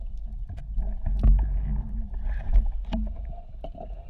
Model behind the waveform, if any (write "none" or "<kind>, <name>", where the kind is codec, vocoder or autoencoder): vocoder, BigVGAN v2